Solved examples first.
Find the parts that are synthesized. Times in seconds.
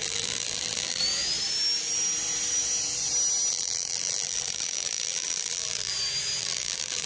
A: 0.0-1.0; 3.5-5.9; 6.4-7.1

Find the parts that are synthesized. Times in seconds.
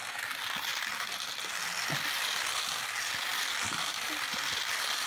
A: 0.7-1.5; 3.3-5.1